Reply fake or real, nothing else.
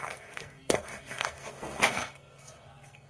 fake